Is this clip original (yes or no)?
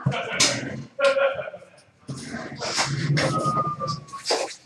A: yes